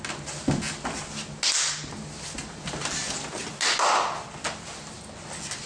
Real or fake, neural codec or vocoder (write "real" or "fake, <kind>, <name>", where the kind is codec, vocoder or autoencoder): real